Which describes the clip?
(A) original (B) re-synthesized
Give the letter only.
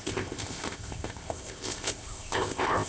B